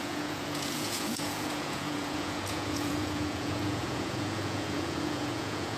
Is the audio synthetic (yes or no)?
yes